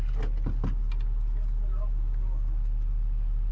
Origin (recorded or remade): recorded